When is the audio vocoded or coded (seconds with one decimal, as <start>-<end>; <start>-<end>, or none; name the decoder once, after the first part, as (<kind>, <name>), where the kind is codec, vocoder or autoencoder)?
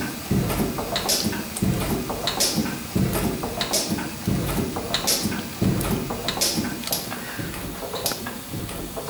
none